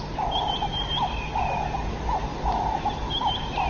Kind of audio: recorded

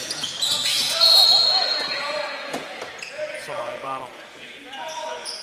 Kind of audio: remade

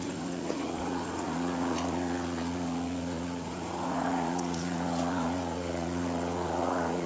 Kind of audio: remade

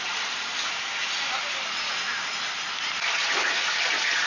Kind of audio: recorded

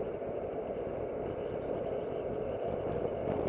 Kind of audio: recorded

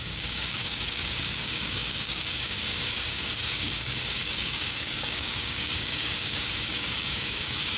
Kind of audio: remade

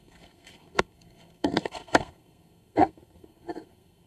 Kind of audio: remade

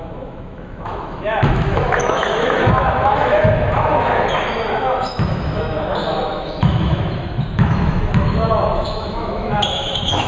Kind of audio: remade